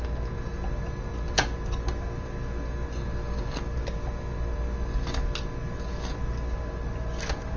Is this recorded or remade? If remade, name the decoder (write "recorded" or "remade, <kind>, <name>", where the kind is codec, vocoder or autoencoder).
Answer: recorded